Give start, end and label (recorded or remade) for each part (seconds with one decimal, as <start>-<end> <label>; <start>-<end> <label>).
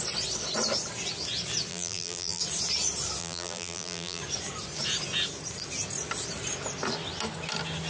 0.0-1.7 recorded; 1.7-2.4 remade; 2.4-3.2 recorded; 3.2-4.2 remade; 4.2-7.9 recorded